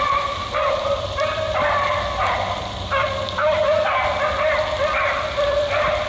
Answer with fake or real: fake